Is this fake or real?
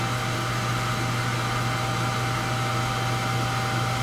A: real